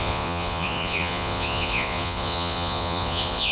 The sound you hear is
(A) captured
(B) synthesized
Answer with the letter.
B